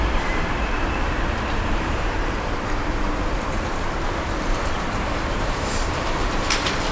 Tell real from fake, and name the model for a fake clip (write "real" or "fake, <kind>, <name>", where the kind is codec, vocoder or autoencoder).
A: fake, vocoder, BigVGAN v2